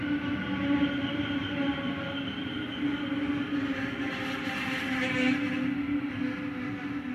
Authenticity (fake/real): real